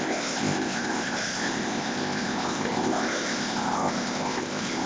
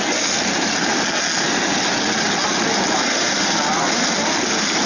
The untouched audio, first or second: second